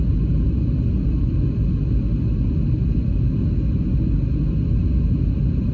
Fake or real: real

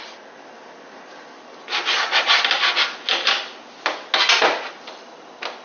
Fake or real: real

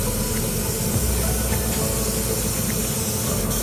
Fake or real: real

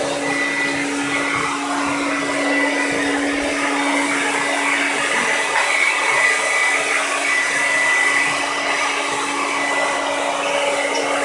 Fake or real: real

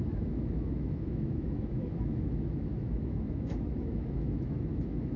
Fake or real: fake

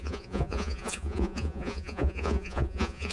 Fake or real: fake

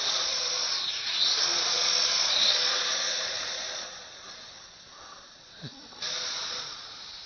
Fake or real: fake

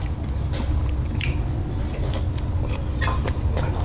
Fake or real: real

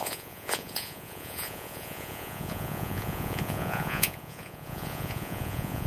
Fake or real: fake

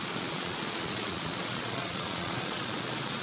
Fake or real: fake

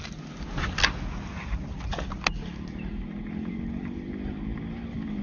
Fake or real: real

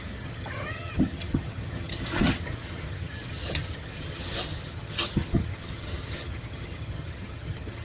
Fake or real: fake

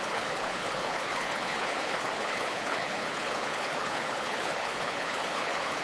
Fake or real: fake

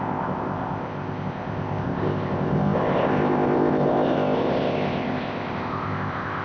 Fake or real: fake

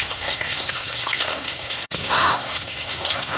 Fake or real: fake